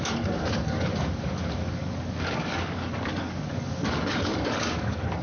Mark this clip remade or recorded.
remade